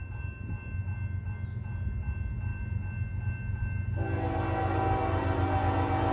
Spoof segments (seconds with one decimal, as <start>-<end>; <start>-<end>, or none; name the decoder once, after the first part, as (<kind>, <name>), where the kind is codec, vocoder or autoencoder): none